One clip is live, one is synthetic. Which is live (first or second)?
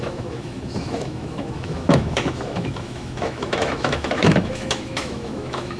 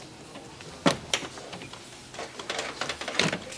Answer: second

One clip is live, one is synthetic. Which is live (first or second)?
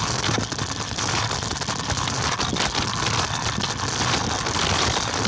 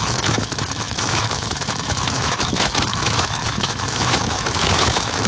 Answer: first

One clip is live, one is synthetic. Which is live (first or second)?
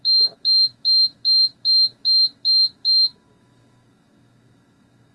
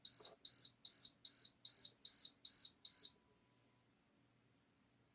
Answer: second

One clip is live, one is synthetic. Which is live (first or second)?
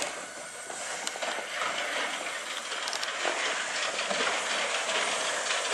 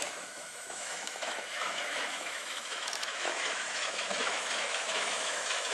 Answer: first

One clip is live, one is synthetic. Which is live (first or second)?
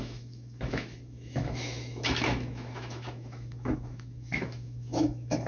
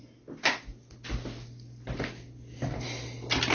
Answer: second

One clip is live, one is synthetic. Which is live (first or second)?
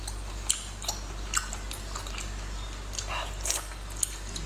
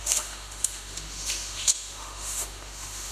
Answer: first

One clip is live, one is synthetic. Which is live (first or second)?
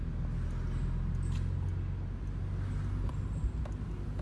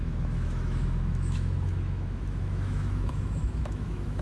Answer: first